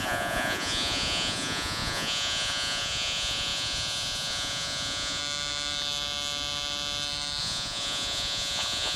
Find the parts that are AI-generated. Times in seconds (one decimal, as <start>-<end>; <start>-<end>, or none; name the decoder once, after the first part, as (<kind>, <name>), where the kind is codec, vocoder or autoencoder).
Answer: 0.0-5.2 (vocoder, Vocos); 7.4-9.0